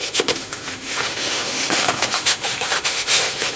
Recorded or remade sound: remade